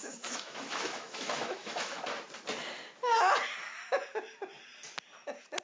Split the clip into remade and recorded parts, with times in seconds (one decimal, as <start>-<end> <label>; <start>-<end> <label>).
0.0-2.0 remade; 2.0-5.6 recorded